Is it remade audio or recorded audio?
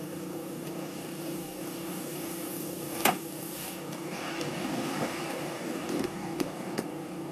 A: remade